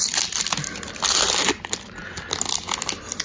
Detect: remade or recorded recorded